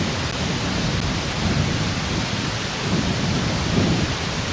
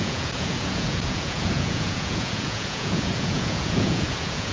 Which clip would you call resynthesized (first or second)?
second